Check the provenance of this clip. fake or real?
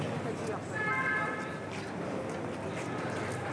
real